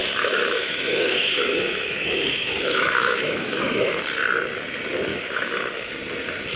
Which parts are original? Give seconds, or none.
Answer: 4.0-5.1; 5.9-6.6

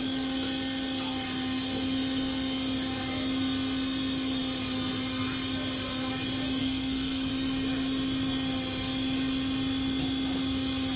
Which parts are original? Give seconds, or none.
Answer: 0.0-6.6; 7.3-11.0

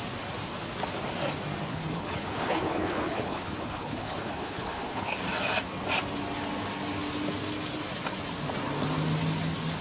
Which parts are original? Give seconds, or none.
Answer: 0.0-1.7; 5.2-9.8

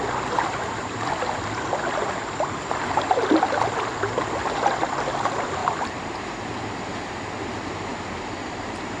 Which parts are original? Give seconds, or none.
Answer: 0.0-5.6; 6.8-7.9

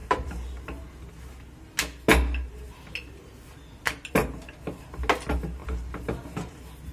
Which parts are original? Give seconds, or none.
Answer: 1.1-4.2; 4.8-5.6; 6.5-6.9